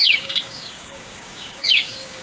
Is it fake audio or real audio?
fake